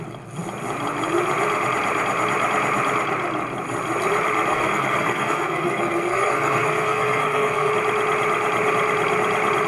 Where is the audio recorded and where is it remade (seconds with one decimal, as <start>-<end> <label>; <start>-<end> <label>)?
0.0-4.5 recorded; 4.5-7.7 remade; 7.7-9.7 recorded